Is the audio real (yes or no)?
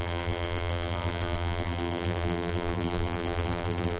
no